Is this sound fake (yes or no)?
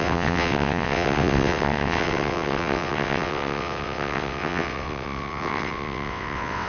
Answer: yes